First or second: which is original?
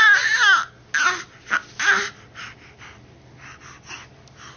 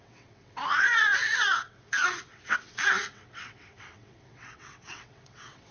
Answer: first